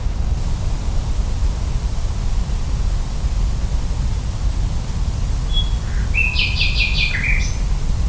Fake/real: real